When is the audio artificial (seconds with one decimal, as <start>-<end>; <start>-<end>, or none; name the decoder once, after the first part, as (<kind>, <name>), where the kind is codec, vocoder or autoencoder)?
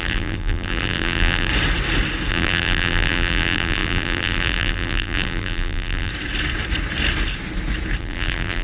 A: 0.0-1.5 (vocoder, BigVGAN v2); 2.3-6.1; 8.0-8.6